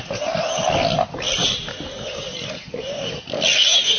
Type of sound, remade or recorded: recorded